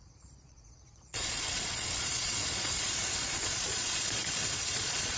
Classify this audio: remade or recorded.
remade